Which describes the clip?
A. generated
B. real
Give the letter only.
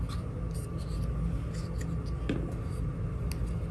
B